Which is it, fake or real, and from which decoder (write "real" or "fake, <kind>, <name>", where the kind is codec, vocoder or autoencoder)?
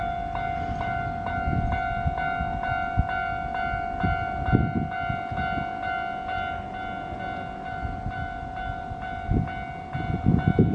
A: real